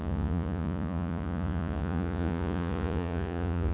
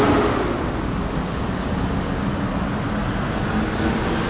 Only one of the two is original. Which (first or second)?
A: second